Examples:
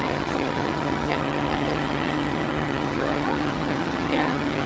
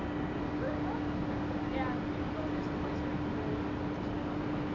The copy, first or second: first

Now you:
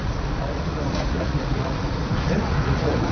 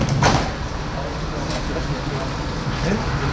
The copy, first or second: first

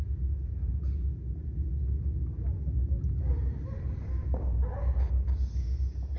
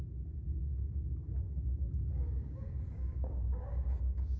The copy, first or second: second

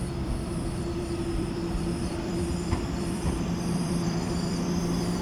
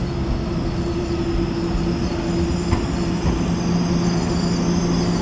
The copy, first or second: first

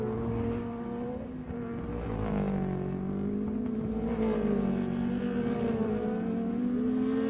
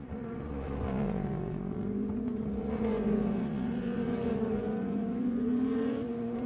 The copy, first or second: second